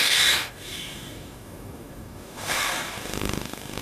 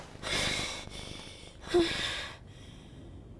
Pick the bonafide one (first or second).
second